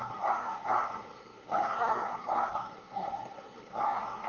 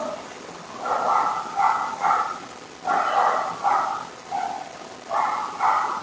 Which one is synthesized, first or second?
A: first